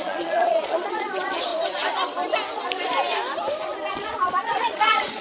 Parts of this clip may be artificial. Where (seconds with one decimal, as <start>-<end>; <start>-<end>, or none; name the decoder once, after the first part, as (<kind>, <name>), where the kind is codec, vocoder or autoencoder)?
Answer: 0.0-1.5 (vocoder, Vocos); 3.9-5.2

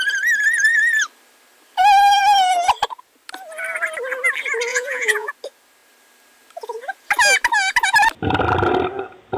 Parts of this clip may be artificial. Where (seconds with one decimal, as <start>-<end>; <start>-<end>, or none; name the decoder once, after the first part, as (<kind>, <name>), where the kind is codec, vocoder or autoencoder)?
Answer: 4.7-5.3 (vocoder, Vocos)

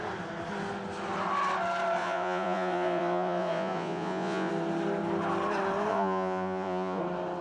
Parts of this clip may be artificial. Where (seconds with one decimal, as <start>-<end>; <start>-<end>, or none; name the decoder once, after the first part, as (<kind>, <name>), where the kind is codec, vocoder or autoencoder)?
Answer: 2.0-4.5 (vocoder, Vocos); 5.9-7.0

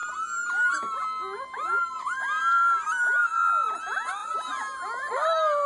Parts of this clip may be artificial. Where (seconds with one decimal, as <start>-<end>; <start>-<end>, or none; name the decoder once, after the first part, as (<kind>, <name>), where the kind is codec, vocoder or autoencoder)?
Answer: none

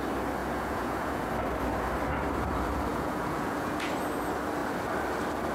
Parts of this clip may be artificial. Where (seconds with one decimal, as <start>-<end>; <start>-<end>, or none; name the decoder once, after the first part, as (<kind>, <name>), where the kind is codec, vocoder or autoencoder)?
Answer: 0.4-1.3 (vocoder, Vocos); 2.9-3.9

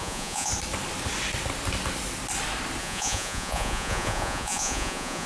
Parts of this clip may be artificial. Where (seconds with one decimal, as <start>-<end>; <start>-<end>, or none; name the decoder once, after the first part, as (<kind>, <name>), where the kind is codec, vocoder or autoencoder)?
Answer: 0.0-0.5 (vocoder, Vocos); 2.8-5.3

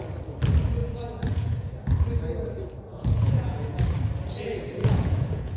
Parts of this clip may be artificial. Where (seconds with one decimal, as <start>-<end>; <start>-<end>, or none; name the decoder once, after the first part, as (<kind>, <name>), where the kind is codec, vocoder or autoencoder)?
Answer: 0.8-1.7 (vocoder, Vocos); 2.9-3.8; 4.8-5.6